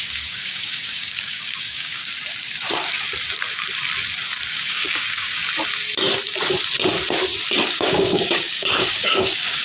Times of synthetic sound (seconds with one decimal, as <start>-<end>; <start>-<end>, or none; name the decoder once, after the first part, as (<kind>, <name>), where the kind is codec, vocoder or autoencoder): 0.0-2.0 (codec, DAC); 4.5-5.4; 7.7-9.6